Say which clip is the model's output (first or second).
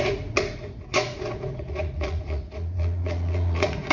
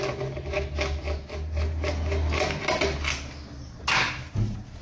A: first